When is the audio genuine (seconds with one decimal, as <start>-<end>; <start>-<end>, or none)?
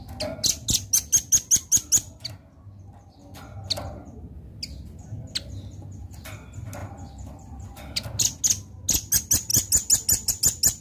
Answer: 0.0-10.8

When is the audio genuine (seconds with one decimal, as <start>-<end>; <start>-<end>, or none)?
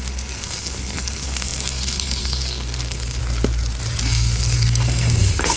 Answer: 3.2-4.0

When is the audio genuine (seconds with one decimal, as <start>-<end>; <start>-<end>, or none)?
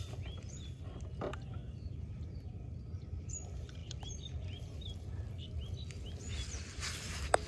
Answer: 0.0-7.5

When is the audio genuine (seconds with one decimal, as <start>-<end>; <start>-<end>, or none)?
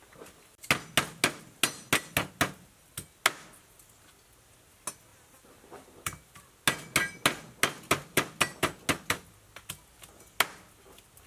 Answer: 0.0-5.1; 6.5-11.3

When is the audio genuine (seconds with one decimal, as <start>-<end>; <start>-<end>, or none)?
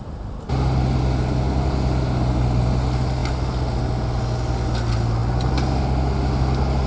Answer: 0.0-6.9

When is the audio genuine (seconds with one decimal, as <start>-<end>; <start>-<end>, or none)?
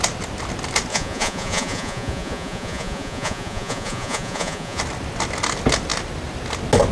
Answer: 0.0-0.9; 4.8-6.9